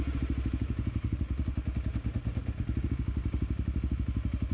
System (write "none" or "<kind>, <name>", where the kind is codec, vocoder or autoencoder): none